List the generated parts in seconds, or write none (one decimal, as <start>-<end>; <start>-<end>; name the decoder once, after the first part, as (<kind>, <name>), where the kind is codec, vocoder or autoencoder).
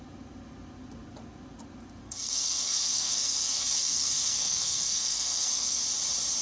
2.0-5.8 (codec, SNAC)